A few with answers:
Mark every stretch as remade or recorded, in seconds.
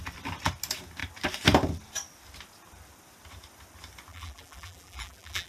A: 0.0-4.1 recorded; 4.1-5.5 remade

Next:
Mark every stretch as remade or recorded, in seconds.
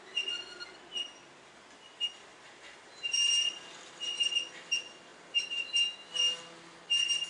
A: 0.0-2.3 recorded; 2.3-3.1 remade; 3.1-7.3 recorded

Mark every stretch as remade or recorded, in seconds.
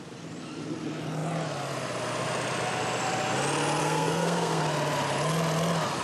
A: 0.0-3.8 recorded; 3.8-4.6 remade; 4.6-6.0 recorded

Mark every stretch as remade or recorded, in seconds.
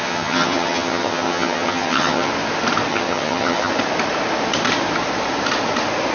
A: 0.0-2.3 remade; 2.3-2.9 recorded; 2.9-3.7 remade; 3.7-6.1 recorded